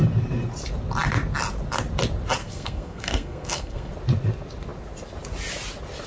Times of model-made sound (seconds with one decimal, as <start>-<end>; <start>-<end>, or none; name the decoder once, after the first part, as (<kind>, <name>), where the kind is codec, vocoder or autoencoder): 2.4-3.9 (codec, SNAC)

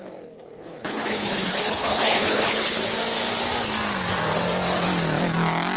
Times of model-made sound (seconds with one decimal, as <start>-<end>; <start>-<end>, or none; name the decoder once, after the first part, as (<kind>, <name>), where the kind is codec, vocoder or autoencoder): 0.0-2.8 (codec, HILCodec)

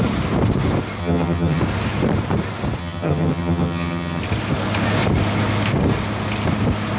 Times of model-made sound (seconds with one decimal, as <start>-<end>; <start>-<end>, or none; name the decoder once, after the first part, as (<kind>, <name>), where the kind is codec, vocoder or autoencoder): 1.0-1.6 (vocoder, HiFi-GAN); 2.8-4.2

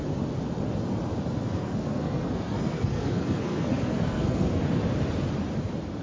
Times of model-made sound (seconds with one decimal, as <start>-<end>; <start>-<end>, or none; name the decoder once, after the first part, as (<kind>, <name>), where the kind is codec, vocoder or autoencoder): 1.4-4.6 (codec, SNAC)

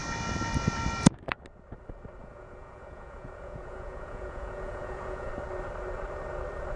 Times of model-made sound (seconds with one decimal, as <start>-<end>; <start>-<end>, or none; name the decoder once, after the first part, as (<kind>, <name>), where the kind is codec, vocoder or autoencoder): 2.2-5.3 (vocoder, Vocos)

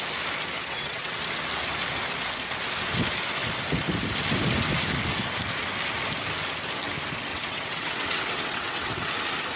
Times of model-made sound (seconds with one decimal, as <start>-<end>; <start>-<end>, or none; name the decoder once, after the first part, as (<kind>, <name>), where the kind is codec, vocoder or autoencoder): 0.6-1.1 (vocoder, WaveNeXt); 7.3-9.1

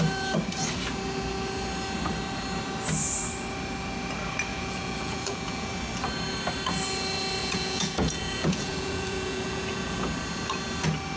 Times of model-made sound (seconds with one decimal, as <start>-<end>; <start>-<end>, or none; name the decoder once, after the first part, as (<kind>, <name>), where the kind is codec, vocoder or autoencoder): 4.5-5.7 (vocoder, Vocos); 7.4-10.1

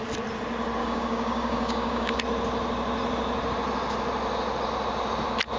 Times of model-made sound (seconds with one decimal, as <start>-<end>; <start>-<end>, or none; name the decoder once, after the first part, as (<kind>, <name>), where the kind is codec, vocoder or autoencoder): 0.8-2.2 (codec, DAC)